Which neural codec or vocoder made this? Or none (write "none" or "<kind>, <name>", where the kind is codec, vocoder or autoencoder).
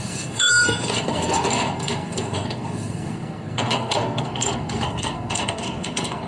codec, SNAC